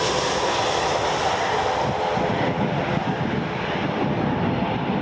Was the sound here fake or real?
real